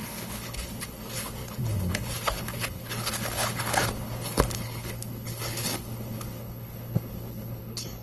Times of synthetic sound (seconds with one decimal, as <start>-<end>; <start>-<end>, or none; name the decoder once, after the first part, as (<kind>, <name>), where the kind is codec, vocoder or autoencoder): 0.0-8.0 (codec, HILCodec)